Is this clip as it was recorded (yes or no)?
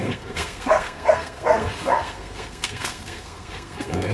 no